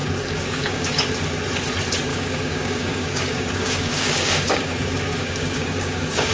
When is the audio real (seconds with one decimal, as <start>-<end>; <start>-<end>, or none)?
1.0-2.1